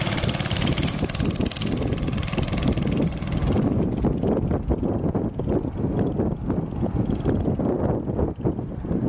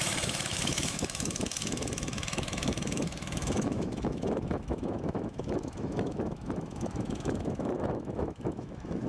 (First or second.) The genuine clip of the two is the first